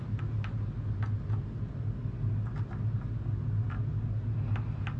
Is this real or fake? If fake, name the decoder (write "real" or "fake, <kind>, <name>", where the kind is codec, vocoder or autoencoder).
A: real